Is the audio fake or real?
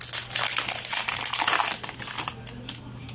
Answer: real